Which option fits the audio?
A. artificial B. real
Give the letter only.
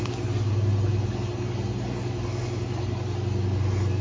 B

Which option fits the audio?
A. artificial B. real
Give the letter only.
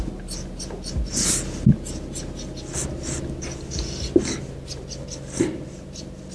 B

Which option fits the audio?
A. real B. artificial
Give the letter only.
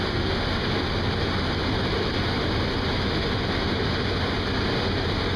A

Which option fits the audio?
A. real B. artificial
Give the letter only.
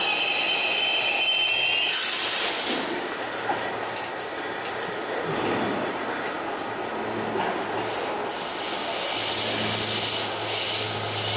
A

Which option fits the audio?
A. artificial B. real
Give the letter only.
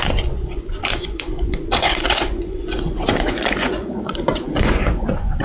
A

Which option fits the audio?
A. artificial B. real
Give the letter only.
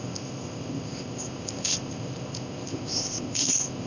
A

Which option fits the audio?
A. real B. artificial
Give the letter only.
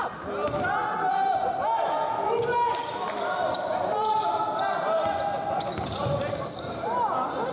A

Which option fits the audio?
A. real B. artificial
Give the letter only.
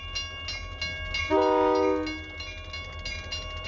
A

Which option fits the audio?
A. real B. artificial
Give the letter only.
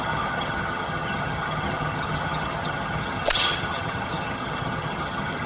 B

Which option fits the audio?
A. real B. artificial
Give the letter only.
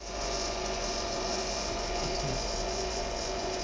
B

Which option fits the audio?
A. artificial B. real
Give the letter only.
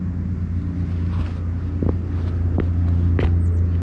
B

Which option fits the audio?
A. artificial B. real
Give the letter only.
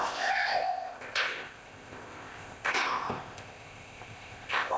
A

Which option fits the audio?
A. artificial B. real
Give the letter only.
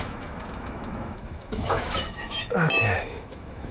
A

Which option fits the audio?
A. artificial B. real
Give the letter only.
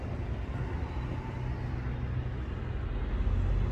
B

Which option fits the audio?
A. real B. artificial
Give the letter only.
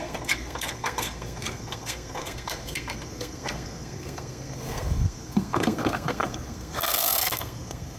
B